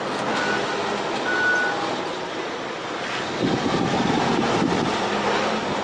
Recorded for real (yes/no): yes